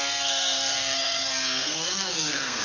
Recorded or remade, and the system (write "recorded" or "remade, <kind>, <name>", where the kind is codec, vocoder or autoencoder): remade, codec, SNAC